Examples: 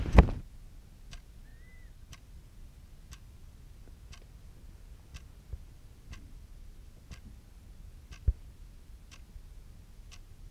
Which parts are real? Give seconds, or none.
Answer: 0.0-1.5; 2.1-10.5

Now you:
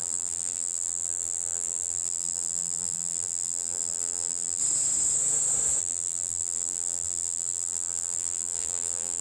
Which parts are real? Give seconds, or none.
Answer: 4.6-5.8

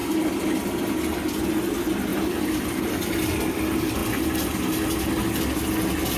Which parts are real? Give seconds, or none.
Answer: 0.9-2.1; 3.4-6.2